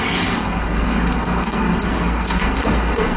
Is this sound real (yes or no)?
no